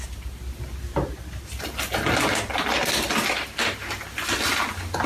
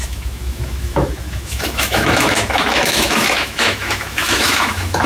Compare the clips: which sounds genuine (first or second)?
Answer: first